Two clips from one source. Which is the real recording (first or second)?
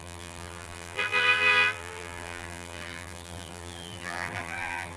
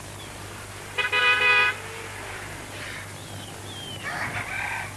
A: second